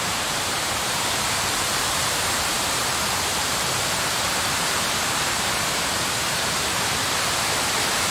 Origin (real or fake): fake